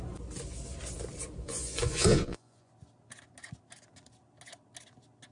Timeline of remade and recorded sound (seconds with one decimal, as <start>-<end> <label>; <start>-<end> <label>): 0.0-1.4 recorded; 1.4-2.7 remade; 2.7-5.3 recorded